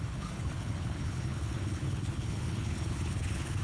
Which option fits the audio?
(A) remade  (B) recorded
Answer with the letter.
A